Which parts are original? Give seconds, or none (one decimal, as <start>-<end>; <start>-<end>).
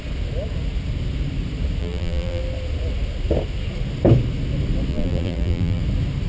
0.0-1.8; 2.4-4.9; 5.8-6.3